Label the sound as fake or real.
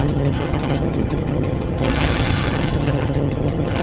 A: fake